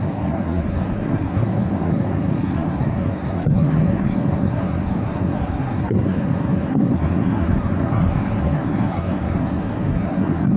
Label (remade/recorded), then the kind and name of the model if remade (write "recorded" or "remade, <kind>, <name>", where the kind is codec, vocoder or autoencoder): remade, codec, SNAC